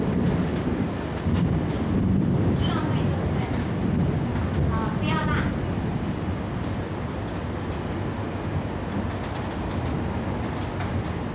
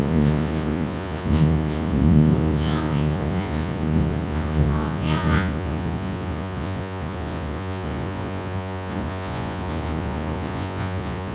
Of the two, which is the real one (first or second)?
first